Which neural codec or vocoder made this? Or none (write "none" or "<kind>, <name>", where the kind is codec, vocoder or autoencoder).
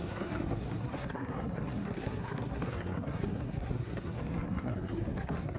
codec, SNAC